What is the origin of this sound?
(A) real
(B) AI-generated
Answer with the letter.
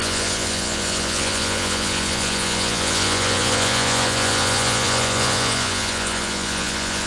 B